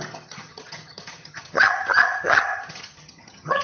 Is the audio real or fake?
fake